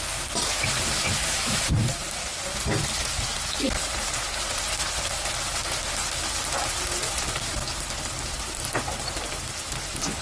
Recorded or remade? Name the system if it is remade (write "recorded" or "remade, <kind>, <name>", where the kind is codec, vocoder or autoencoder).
remade, vocoder, BigVGAN v2